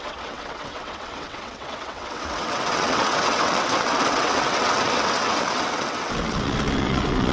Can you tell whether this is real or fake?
fake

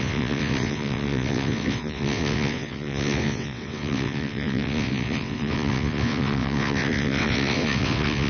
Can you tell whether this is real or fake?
fake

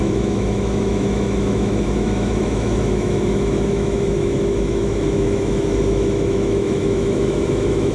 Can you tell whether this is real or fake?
fake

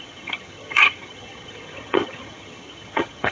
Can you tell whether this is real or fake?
fake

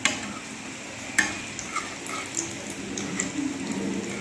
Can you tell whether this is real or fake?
real